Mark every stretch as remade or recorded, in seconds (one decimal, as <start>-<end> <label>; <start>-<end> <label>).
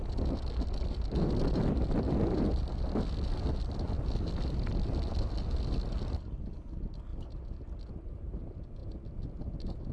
0.0-9.9 recorded